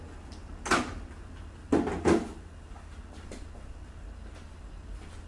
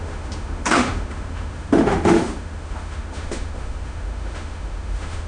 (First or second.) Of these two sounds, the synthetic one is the second